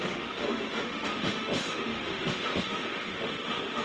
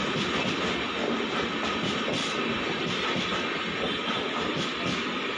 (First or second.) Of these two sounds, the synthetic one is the first